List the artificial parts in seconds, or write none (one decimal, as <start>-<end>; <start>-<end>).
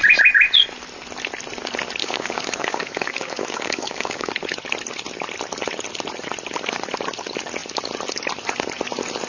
2.0-4.3